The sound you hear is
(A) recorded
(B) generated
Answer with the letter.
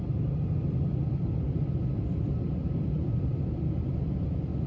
B